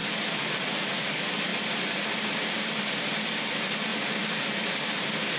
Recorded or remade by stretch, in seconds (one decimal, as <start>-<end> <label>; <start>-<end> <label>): 0.0-0.9 remade; 0.9-1.5 recorded; 1.5-3.3 remade; 3.3-3.9 recorded; 3.9-5.4 remade